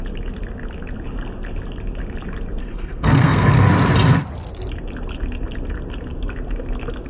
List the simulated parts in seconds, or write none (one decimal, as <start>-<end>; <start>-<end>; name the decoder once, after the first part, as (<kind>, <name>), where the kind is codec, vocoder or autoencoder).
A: 2.6-3.7 (codec, SNAC)